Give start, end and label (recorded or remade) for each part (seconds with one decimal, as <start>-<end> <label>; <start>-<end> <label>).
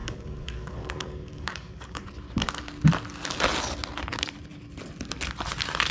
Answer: 0.0-2.0 remade; 2.0-5.9 recorded